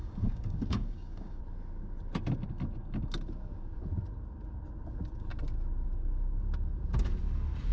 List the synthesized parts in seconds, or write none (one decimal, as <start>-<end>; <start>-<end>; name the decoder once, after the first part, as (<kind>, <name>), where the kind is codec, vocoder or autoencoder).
0.0-1.4 (codec, DAC)